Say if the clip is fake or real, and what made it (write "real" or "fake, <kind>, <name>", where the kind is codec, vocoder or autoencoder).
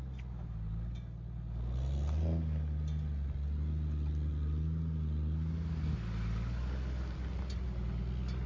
real